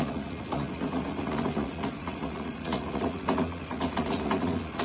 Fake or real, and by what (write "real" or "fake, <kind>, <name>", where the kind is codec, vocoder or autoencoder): fake, vocoder, Vocos